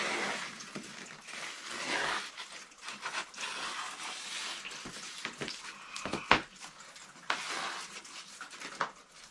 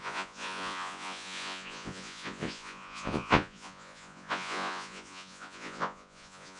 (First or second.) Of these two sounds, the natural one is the first